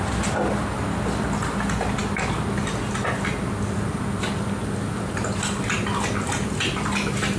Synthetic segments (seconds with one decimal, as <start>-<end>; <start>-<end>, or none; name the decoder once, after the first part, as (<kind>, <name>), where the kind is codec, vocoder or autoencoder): none